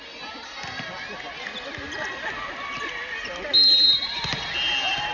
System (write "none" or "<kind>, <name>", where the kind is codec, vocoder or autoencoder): none